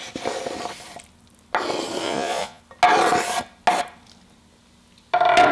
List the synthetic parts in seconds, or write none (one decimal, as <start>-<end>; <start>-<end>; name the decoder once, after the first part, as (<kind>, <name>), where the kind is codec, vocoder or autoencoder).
2.0-2.6 (vocoder, Vocos)